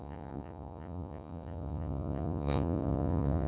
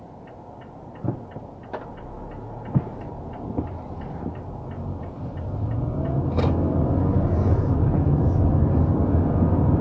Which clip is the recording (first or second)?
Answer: second